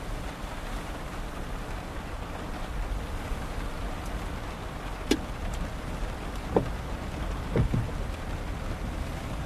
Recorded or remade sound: recorded